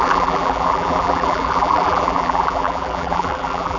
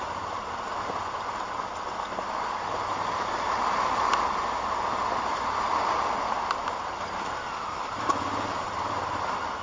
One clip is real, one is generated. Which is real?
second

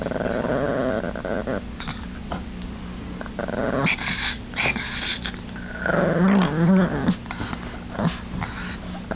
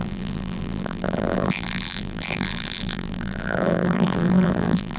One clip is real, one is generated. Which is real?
first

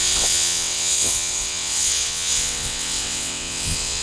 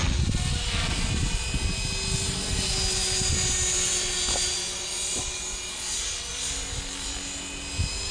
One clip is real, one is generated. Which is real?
second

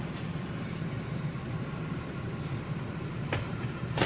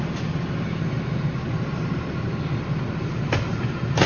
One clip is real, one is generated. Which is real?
second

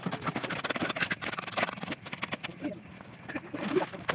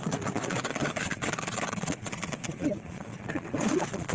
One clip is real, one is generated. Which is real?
first